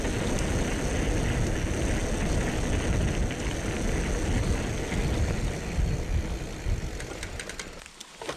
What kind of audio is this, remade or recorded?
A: recorded